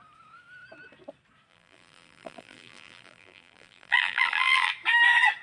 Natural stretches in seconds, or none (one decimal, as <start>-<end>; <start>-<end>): 0.0-1.5; 4.7-5.4